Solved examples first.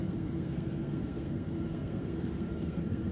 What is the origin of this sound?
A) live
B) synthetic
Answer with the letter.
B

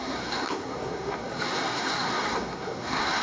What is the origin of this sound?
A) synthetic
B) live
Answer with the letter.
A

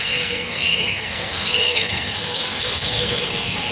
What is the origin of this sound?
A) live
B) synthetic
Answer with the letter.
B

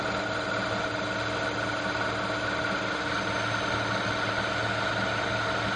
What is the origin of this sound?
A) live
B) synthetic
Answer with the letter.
A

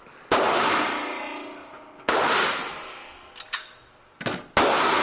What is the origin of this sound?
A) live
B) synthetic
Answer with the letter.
A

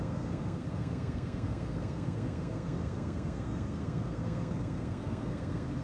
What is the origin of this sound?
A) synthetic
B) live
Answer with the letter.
A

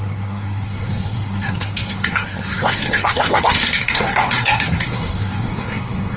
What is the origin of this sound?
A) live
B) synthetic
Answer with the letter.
B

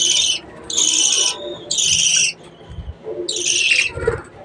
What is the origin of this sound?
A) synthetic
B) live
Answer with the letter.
B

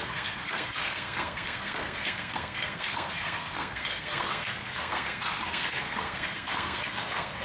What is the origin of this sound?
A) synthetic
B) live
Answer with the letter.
A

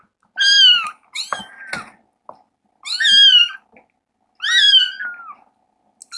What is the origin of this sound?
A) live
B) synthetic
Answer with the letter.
A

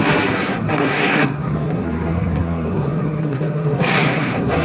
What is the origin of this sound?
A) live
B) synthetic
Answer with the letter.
B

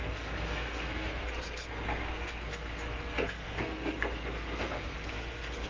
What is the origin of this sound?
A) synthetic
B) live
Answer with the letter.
A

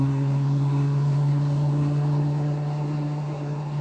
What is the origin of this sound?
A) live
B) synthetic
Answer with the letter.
B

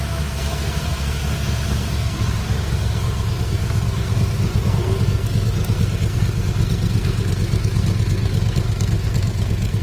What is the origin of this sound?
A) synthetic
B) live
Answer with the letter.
A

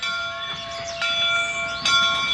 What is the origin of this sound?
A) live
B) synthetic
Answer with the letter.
A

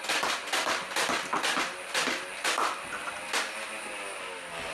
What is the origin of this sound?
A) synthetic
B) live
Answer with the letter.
B